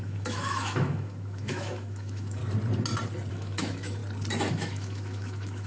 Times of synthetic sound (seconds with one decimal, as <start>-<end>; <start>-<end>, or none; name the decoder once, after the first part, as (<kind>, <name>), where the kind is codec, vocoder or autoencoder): 0.0-2.4 (autoencoder, DAC-VAE); 3.3-4.0; 4.5-5.7